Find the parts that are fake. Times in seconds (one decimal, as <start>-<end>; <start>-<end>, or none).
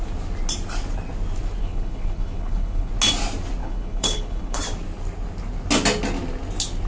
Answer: 1.6-2.9; 3.6-4.6